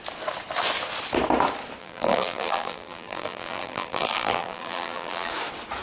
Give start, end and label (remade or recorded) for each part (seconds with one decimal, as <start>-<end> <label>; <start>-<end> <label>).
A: 0.0-1.8 recorded; 1.8-5.3 remade; 5.3-5.8 recorded